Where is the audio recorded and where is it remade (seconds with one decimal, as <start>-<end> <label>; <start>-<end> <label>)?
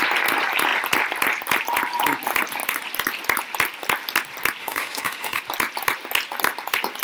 0.0-4.6 recorded; 4.6-5.4 remade; 5.4-7.0 recorded